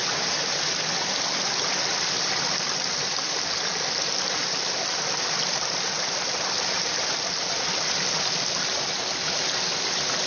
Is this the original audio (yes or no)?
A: yes